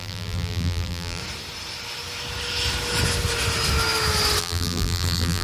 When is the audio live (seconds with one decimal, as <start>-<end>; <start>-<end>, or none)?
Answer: 1.2-4.4